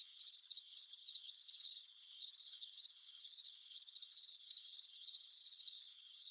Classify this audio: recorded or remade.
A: remade